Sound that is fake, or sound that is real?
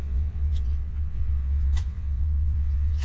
fake